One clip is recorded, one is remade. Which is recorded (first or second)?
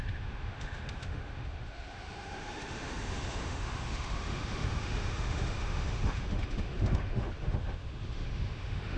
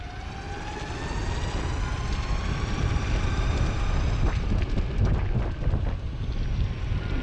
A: second